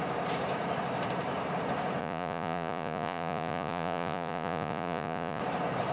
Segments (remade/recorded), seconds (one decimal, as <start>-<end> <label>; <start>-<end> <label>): 0.0-2.0 recorded; 2.0-5.4 remade; 5.4-5.9 recorded